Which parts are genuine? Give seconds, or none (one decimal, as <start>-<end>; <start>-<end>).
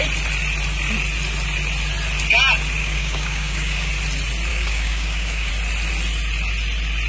0.0-2.8; 3.9-4.5; 5.5-7.1